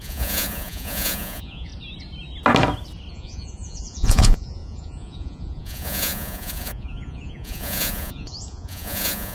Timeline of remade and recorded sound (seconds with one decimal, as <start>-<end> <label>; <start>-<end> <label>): 0.0-1.7 remade; 1.7-3.1 recorded; 3.1-9.3 remade